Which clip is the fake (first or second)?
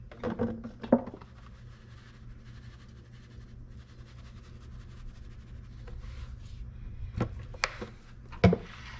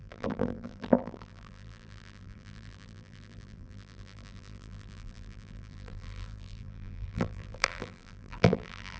second